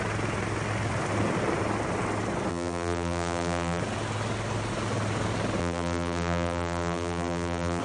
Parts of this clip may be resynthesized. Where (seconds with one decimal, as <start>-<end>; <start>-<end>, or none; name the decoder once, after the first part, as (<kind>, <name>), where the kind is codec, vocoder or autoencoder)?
2.5-3.8 (vocoder, BigVGAN v2); 5.6-7.8